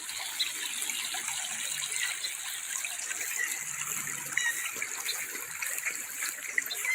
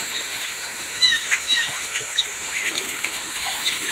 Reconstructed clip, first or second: second